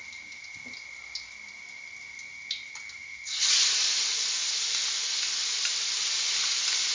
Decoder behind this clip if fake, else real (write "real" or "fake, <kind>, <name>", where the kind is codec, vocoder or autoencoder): real